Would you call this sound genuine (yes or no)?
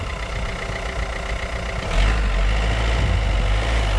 yes